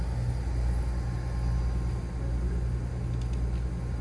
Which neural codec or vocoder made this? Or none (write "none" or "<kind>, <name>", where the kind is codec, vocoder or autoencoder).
none